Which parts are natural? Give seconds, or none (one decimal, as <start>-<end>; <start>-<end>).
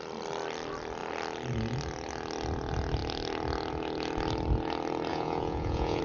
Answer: 0.0-5.1